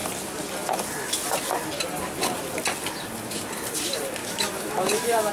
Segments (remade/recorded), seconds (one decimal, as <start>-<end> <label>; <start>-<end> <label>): 0.0-4.2 recorded; 4.2-5.3 remade